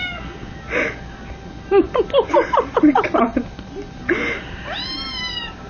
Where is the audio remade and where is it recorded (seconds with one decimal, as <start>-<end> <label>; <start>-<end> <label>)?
0.0-2.3 recorded; 2.3-5.7 remade